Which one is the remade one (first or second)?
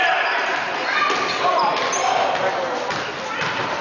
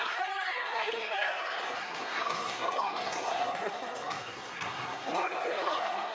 second